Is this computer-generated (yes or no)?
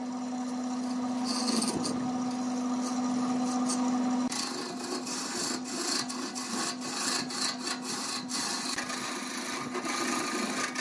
no